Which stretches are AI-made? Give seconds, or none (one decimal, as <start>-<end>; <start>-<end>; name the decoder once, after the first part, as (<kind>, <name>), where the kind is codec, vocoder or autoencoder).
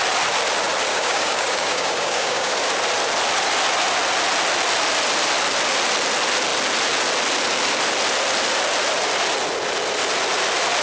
0.9-2.5 (codec, DAC)